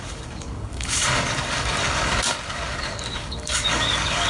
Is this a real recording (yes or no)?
no